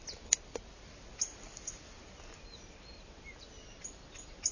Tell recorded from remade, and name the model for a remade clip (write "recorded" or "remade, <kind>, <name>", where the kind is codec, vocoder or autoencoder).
recorded